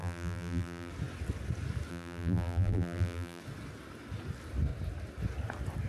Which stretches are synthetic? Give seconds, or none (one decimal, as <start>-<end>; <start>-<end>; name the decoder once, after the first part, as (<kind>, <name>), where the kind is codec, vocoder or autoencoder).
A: 0.0-0.9 (vocoder, BigVGAN v2); 1.9-3.4